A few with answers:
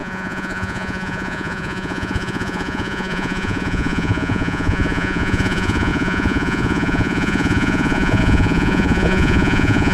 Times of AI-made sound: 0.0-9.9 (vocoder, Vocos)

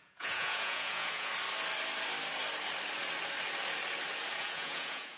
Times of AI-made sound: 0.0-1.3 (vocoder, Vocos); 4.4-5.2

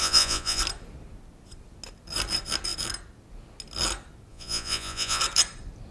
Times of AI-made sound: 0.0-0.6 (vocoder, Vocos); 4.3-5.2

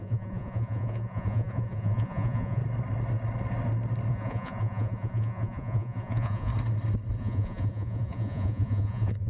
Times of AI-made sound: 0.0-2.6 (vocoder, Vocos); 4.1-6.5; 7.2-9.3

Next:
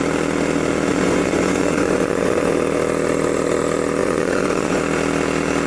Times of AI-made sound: 0.9-2.5 (vocoder, Vocos); 4.0-4.8